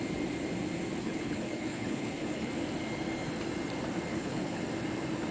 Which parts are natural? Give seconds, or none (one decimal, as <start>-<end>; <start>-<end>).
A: 0.0-1.0; 2.5-4.1; 4.6-5.3